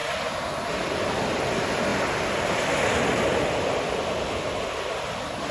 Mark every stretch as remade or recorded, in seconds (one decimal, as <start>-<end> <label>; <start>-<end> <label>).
0.0-0.7 recorded; 0.7-1.9 remade; 1.9-3.2 recorded; 3.2-5.5 remade